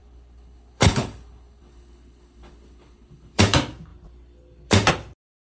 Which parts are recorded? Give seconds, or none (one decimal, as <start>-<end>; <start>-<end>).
3.4-5.6